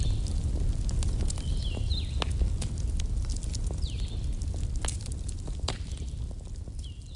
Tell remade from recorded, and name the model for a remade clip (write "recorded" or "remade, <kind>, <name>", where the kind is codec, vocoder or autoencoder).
recorded